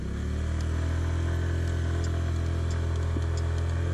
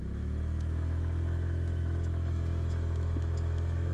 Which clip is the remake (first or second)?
second